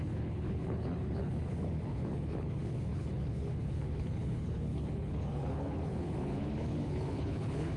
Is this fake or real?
fake